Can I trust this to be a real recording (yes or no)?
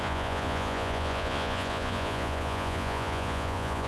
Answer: no